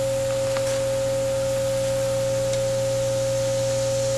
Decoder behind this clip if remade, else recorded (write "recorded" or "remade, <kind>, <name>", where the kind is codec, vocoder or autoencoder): recorded